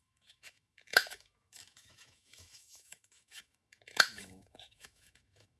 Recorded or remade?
remade